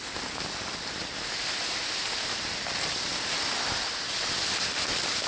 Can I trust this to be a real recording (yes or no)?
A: yes